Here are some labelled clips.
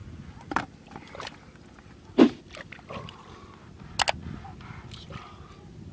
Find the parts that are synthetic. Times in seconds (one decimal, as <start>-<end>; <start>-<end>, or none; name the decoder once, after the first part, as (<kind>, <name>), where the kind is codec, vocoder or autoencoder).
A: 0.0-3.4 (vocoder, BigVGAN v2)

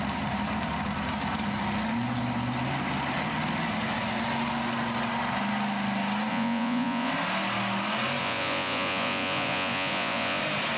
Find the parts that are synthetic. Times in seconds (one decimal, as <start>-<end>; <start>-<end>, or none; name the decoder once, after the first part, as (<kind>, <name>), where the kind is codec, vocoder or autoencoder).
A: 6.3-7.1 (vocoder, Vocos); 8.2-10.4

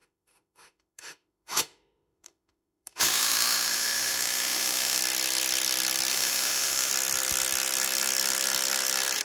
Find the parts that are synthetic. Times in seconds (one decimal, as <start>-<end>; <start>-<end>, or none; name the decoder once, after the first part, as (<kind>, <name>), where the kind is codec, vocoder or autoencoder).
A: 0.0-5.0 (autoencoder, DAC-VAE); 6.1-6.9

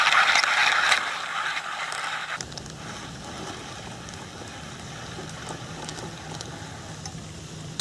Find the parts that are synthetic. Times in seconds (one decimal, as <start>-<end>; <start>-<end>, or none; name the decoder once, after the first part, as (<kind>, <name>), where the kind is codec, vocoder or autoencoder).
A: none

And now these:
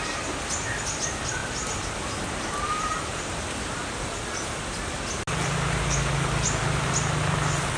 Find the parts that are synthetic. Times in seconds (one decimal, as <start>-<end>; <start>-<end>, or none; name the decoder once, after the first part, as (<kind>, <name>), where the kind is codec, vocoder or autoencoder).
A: none

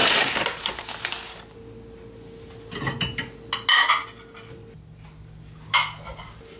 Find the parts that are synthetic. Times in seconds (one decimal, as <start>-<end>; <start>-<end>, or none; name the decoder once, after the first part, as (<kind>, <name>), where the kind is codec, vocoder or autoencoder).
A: none